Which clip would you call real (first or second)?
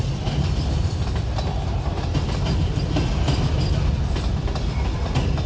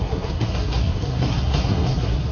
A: first